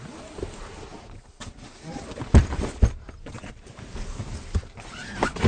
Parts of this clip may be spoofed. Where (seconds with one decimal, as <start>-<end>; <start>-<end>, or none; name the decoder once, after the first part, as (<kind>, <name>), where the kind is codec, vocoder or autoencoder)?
none